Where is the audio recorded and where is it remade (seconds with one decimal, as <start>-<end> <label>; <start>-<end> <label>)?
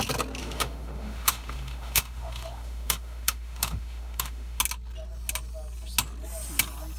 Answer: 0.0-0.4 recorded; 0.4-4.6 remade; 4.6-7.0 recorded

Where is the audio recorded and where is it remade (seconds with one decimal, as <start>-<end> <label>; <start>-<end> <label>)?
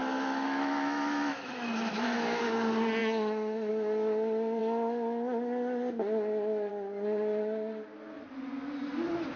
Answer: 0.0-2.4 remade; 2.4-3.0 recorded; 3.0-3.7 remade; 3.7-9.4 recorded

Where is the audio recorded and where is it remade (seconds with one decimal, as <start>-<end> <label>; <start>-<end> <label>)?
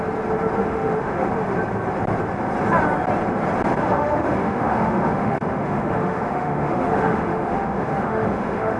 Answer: 0.0-0.6 recorded; 0.6-1.3 remade; 1.3-3.7 recorded; 3.7-8.8 remade